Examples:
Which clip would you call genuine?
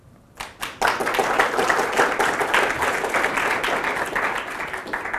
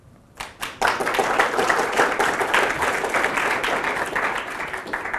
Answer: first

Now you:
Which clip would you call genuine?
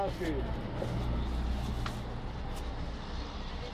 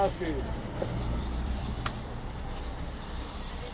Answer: first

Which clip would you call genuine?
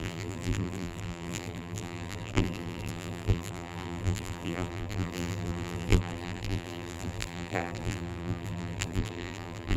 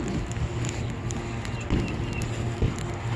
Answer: second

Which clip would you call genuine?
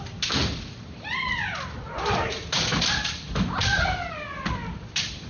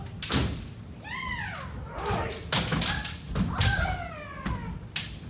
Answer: second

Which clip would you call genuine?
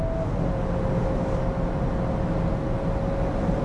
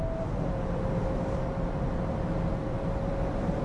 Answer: first